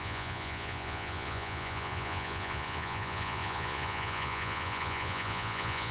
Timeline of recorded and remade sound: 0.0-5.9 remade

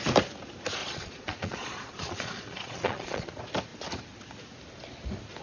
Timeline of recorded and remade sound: 0.0-0.8 recorded; 0.8-3.3 remade; 3.3-5.4 recorded

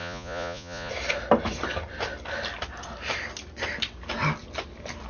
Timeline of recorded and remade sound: 0.0-0.9 remade; 0.9-5.1 recorded

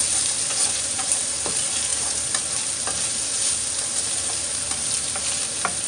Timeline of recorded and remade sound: 0.0-0.5 recorded; 0.5-1.1 remade; 1.1-5.9 recorded

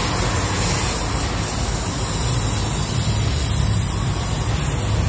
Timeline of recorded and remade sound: 0.0-5.1 recorded

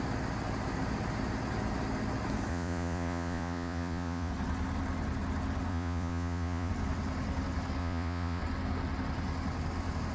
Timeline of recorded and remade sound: 0.0-2.5 recorded; 2.5-4.3 remade; 4.3-5.7 recorded; 5.7-6.7 remade; 6.7-7.8 recorded; 7.8-8.4 remade; 8.4-10.1 recorded

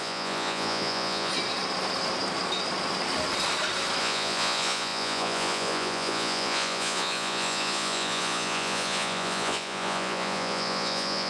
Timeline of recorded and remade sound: 0.0-1.3 remade; 1.3-4.0 recorded; 4.0-11.3 remade